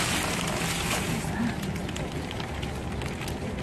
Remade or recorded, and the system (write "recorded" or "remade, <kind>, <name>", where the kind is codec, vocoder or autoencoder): recorded